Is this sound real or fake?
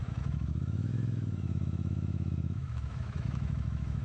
fake